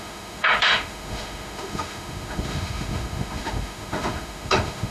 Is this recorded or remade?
remade